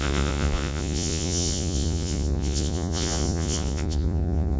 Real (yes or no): no